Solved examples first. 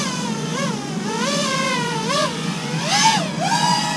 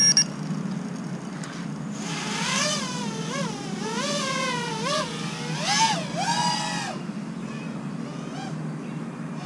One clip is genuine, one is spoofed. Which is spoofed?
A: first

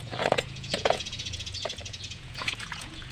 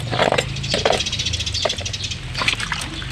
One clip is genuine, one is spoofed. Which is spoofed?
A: first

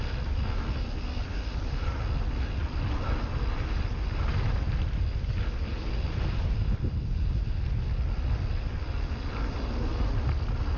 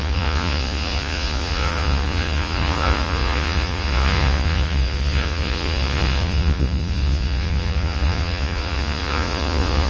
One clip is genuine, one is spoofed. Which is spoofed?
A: second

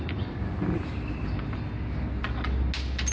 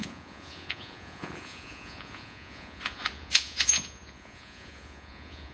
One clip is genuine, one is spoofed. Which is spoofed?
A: second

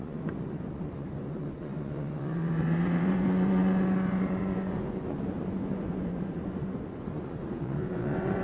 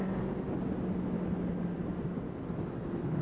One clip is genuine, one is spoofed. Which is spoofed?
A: first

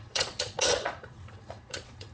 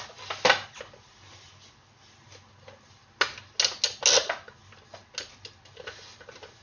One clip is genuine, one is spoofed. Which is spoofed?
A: first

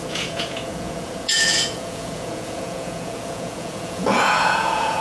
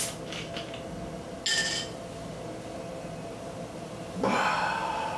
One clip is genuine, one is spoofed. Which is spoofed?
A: first